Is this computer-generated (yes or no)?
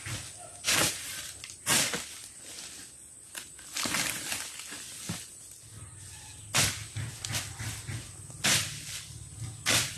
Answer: no